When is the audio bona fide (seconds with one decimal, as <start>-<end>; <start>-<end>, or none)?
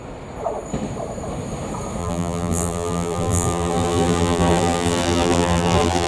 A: 0.0-2.0